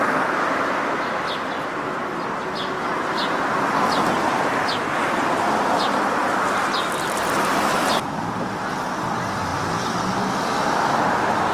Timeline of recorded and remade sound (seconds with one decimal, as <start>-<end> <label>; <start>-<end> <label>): 0.0-11.5 recorded